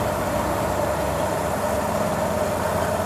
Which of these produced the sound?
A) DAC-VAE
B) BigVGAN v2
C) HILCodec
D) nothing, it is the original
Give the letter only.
D